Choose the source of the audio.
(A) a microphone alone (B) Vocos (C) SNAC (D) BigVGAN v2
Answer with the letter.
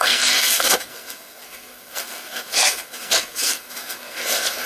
C